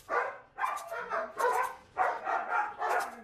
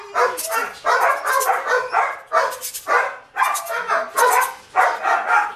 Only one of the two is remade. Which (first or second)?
first